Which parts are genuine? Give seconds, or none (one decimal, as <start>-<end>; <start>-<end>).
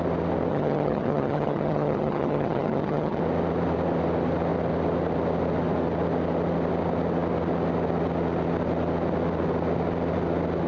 0.0-0.5; 3.2-10.7